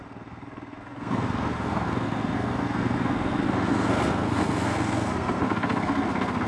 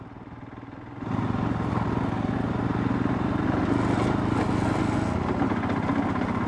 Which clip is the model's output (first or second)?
first